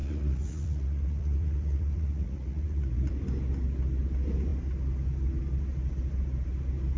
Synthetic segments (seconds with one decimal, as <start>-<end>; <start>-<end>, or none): 0.0-3.1